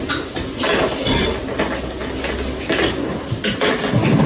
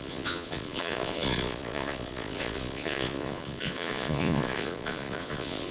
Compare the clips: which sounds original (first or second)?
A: first